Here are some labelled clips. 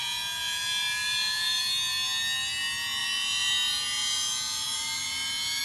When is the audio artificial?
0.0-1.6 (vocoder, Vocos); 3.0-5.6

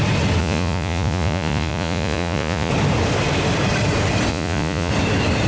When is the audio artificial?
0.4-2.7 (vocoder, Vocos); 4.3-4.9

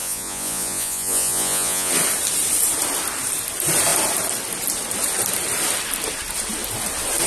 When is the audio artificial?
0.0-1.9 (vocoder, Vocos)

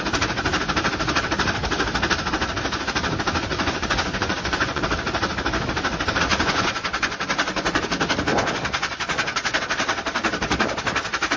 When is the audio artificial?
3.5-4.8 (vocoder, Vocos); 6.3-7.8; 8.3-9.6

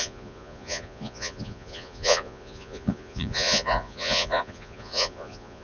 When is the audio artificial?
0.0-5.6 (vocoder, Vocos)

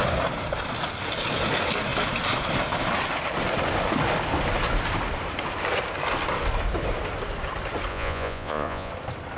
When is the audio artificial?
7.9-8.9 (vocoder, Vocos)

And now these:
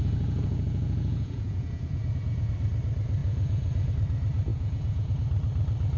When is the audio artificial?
0.0-2.5 (vocoder, Vocos); 3.2-3.9; 4.5-5.1

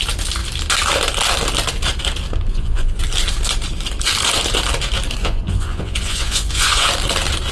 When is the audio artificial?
2.5-3.0 (vocoder, Vocos); 5.2-6.9